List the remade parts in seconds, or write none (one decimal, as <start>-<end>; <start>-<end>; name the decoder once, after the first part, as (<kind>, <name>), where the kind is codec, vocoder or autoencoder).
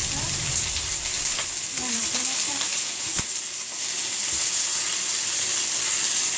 2.7-3.2 (vocoder, Vocos); 4.4-4.9